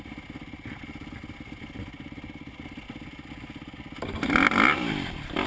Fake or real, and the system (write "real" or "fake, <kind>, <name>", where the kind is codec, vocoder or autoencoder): real